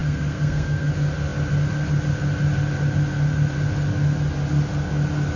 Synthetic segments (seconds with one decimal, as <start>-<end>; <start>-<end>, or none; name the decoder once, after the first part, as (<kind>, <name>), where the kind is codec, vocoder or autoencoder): 0.0-0.9 (codec, SNAC)